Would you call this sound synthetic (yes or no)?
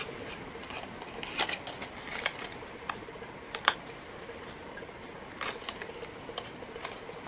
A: yes